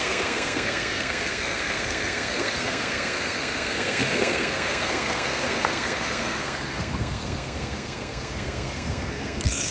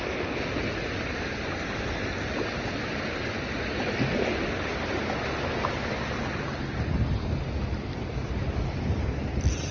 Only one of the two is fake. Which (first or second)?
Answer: first